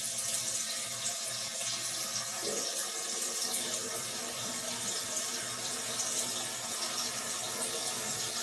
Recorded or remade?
recorded